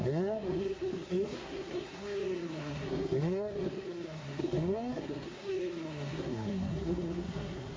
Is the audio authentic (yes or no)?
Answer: no